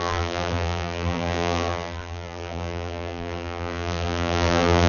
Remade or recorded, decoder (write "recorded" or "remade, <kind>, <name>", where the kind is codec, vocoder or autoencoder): remade, vocoder, BigVGAN v2